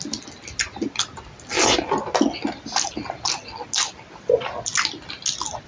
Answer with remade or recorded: recorded